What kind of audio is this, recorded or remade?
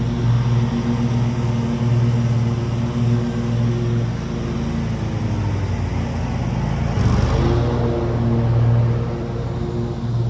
recorded